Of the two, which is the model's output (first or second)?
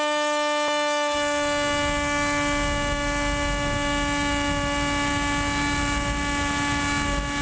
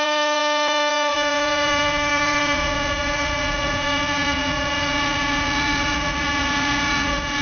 second